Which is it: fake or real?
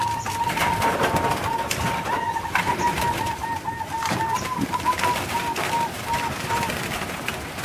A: real